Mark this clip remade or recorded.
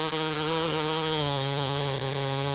remade